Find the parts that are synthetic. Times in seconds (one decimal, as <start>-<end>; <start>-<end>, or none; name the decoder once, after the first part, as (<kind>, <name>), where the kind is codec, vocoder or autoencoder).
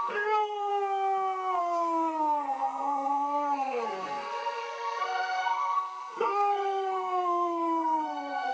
0.0-0.7 (codec, SNAC); 1.6-8.5